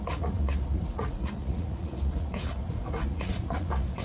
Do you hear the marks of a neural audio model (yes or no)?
yes